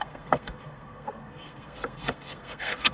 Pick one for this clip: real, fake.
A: fake